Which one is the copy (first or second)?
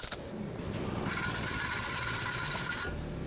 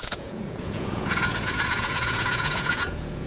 second